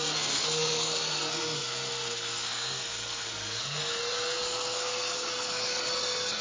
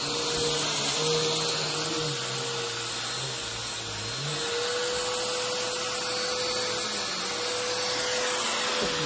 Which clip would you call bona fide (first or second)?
second